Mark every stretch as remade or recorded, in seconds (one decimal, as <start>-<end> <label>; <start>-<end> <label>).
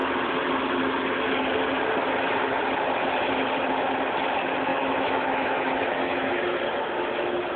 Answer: 0.0-4.7 recorded; 4.7-6.4 remade; 6.4-7.6 recorded